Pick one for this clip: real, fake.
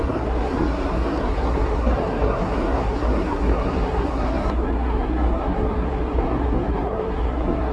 fake